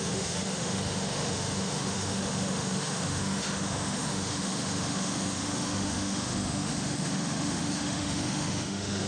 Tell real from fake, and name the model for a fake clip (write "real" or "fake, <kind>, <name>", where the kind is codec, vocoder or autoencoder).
fake, autoencoder, DAC-VAE